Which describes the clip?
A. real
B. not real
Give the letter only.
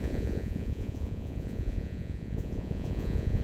B